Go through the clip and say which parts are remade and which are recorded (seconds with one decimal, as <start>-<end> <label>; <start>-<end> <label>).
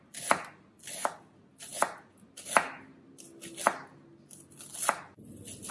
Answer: 0.0-5.7 recorded